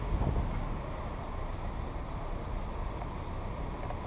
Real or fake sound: real